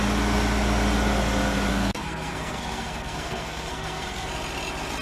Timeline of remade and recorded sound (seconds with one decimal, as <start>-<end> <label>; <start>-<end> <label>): 0.0-1.7 recorded; 1.7-4.3 remade; 4.3-5.0 recorded